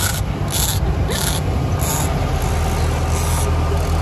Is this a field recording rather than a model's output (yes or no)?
yes